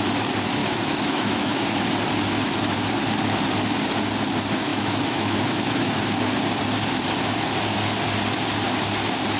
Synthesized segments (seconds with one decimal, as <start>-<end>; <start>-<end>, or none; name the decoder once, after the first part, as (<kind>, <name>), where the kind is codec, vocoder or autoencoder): 0.6-1.7 (autoencoder, DAC-VAE); 4.7-6.0